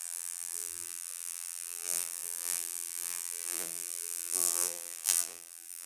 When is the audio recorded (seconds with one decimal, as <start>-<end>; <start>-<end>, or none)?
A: none